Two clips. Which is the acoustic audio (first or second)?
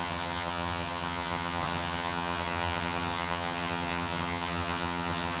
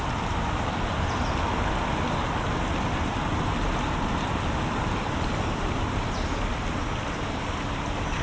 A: second